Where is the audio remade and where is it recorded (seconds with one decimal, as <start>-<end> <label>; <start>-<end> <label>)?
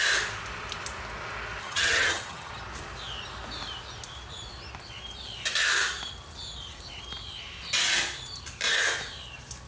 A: 0.0-1.6 recorded; 1.6-2.5 remade; 2.5-9.7 recorded